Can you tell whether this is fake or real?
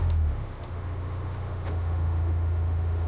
fake